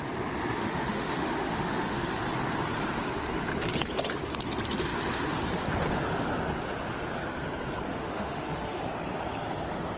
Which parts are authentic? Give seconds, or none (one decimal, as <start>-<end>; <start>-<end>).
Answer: 0.0-0.6; 2.1-7.9; 8.8-10.0